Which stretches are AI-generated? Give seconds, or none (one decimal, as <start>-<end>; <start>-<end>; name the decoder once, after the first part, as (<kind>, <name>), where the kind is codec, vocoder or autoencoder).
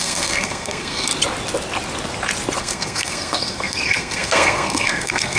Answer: 0.0-1.1 (codec, SNAC); 2.6-5.4